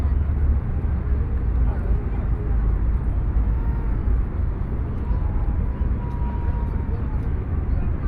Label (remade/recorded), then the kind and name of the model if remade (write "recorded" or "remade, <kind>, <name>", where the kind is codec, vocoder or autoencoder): recorded